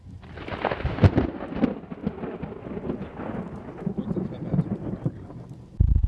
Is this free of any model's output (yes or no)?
yes